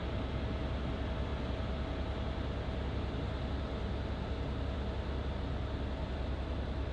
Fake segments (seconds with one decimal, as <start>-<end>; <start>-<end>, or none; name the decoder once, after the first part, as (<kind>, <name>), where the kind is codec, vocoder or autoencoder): none